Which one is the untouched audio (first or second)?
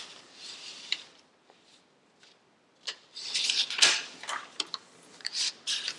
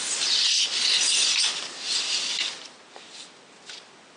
second